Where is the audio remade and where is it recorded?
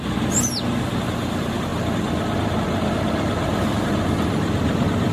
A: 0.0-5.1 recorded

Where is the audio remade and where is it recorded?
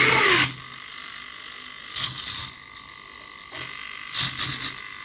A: 0.0-5.0 recorded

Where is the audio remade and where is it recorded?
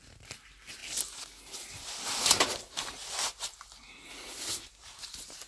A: 0.0-5.5 recorded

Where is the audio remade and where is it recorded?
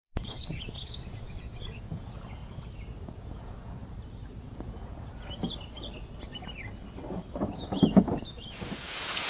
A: 0.0-2.4 remade; 2.4-3.0 recorded; 3.0-3.8 remade; 3.8-4.4 recorded; 4.4-5.1 remade; 5.1-7.4 recorded; 7.4-9.3 remade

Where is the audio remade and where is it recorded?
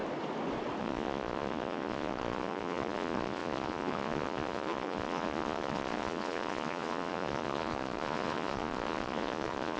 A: 0.0-0.8 recorded; 0.8-9.8 remade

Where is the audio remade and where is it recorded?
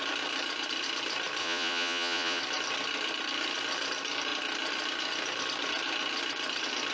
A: 0.0-1.4 recorded; 1.4-2.4 remade; 2.4-6.9 recorded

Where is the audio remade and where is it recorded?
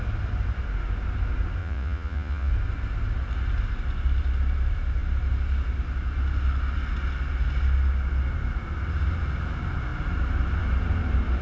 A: 0.0-1.6 recorded; 1.6-2.5 remade; 2.5-11.4 recorded